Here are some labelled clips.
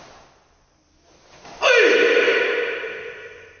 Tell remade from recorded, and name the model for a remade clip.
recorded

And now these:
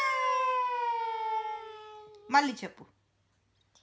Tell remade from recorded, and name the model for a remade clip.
recorded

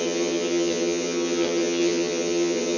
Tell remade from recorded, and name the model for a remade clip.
remade, vocoder, HiFi-GAN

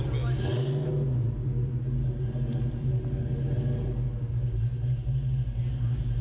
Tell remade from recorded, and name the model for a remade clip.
recorded